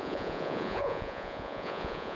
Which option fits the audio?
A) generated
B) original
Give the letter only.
A